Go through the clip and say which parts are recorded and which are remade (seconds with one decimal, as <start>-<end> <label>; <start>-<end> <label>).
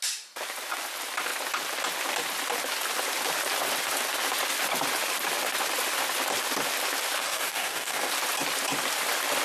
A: 0.0-7.2 recorded; 7.2-8.1 remade; 8.1-9.4 recorded